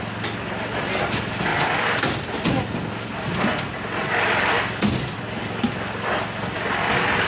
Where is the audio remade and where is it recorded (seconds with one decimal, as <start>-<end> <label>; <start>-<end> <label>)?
0.0-7.3 recorded